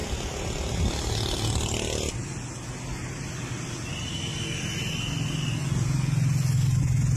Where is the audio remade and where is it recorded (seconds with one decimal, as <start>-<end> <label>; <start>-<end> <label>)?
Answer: 0.0-7.2 recorded